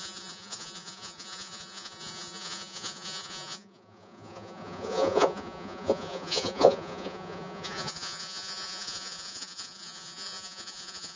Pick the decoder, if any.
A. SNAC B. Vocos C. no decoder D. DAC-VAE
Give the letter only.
B